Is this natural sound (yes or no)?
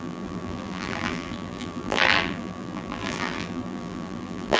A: no